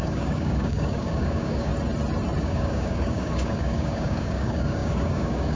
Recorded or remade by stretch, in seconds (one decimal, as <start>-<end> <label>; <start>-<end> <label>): 0.0-1.7 remade; 1.7-2.4 recorded; 2.4-5.6 remade